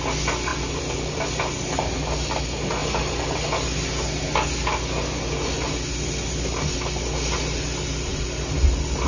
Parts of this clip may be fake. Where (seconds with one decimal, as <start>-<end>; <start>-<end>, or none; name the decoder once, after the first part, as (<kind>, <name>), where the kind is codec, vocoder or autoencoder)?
none